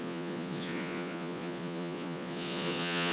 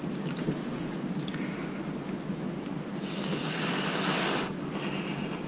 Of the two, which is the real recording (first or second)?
second